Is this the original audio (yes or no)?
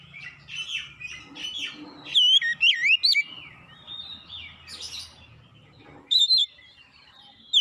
yes